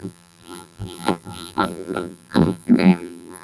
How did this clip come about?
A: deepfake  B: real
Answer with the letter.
A